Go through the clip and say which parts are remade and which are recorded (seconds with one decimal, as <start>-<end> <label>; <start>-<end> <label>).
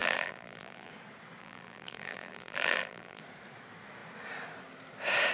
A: 0.0-0.9 remade; 0.9-1.4 recorded; 1.4-3.2 remade; 3.2-5.3 recorded